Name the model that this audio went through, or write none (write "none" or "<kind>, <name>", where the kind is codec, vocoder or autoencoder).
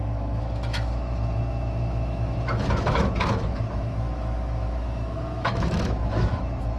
autoencoder, DAC-VAE